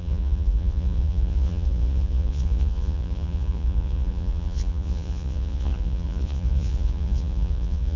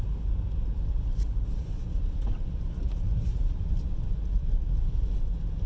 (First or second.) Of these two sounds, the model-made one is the first